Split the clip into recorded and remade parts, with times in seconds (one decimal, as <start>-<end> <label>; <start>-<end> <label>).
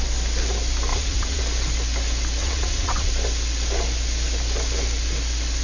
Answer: 0.0-0.9 recorded; 0.9-1.4 remade; 1.4-2.4 recorded; 2.4-3.1 remade; 3.1-5.6 recorded